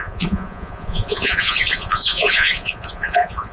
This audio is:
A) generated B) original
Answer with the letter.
A